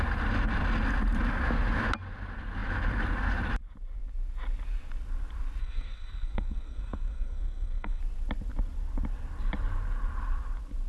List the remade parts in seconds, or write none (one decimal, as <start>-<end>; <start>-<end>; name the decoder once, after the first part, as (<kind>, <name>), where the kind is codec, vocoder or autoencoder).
5.6-8.0 (codec, SNAC)